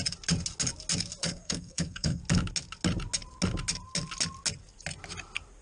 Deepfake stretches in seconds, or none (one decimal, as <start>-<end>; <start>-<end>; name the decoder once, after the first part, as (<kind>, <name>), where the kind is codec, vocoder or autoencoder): 1.2-2.2 (codec, SNAC)